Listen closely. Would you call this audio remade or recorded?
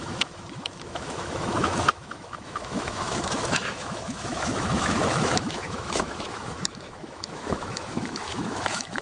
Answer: remade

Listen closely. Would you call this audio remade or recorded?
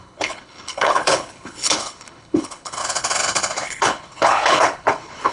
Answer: remade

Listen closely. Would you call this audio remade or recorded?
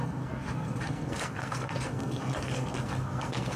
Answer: remade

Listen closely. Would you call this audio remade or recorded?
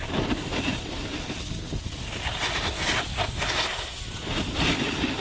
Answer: recorded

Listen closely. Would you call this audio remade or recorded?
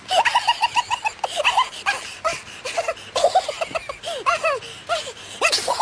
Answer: recorded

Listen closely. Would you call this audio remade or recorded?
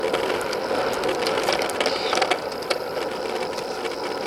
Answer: recorded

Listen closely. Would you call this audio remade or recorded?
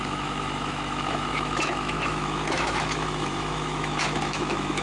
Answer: remade